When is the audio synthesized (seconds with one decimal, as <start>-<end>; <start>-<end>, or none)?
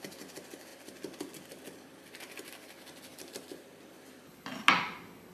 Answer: 3.1-4.1